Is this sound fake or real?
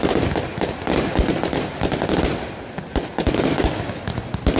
real